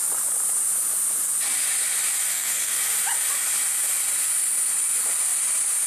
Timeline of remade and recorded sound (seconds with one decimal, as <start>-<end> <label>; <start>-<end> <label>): 0.0-2.3 recorded; 2.3-2.8 remade; 2.8-5.9 recorded